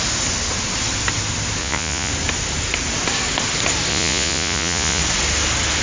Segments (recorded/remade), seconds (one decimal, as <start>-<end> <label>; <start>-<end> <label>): 0.0-1.6 recorded; 1.6-2.1 remade; 2.1-3.9 recorded; 3.9-5.0 remade; 5.0-5.8 recorded